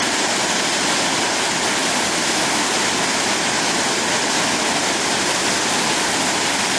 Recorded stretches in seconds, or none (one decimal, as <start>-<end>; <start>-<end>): 0.0-6.8

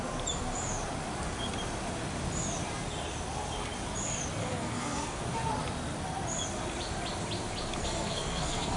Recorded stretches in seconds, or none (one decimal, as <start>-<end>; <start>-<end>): 0.0-4.4; 5.2-7.8

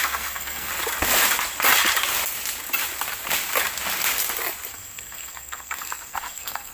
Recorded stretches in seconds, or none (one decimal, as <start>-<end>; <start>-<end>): 0.7-4.7

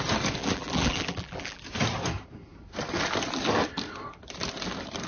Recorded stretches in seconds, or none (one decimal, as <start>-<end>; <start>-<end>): 0.0-0.4; 1.6-5.1

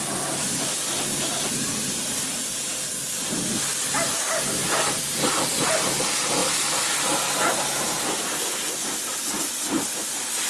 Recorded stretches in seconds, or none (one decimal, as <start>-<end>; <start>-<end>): 0.0-10.5

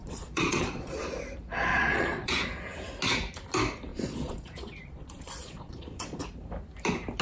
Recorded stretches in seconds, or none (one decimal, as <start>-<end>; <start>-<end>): 1.0-1.7; 2.3-3.9; 6.2-7.2

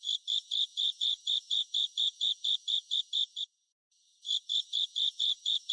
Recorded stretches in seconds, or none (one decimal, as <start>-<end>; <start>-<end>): none

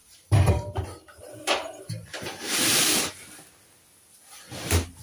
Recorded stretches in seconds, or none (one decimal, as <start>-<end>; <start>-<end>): 3.0-5.0